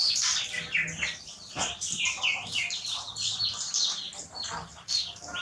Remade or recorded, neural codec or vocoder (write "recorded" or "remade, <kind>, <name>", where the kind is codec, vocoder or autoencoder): recorded